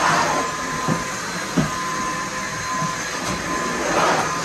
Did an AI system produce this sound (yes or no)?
no